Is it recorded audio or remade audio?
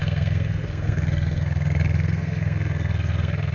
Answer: remade